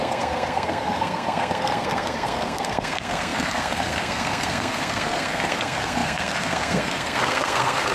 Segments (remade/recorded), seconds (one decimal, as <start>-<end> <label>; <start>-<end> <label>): 0.0-7.9 remade